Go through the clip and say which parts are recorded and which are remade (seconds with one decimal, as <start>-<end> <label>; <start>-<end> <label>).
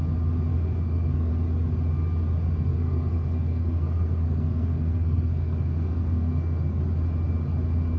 0.0-0.5 recorded; 0.5-1.3 remade; 1.3-2.7 recorded; 2.7-6.8 remade; 6.8-8.0 recorded